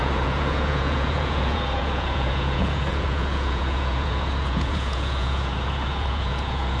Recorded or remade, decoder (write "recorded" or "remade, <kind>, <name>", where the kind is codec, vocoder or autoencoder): remade, vocoder, Vocos